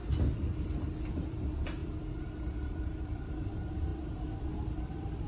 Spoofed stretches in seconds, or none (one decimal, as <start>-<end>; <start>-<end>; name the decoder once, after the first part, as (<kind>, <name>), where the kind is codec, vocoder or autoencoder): 1.1-1.8 (vocoder, BigVGAN v2); 2.6-3.9; 4.5-5.3